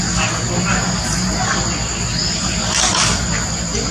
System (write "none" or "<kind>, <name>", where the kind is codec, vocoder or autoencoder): none